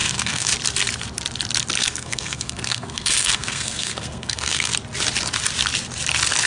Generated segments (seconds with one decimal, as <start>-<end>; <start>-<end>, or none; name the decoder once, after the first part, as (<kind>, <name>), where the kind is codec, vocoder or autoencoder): 0.0-0.5 (codec, SNAC); 1.8-4.7